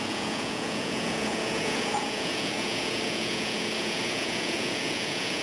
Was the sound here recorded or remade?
remade